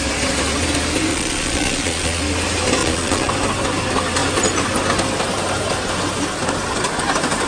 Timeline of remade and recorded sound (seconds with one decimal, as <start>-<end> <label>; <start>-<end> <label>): 0.0-1.1 recorded; 1.1-2.2 remade; 2.2-2.8 recorded; 2.8-3.3 remade; 3.3-7.5 recorded